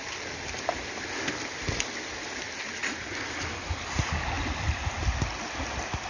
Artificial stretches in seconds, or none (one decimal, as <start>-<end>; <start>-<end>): none